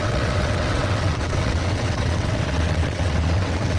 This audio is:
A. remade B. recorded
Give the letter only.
A